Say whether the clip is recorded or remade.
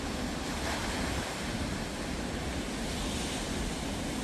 recorded